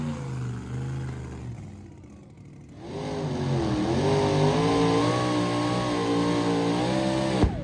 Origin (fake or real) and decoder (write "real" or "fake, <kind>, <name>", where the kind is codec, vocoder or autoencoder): real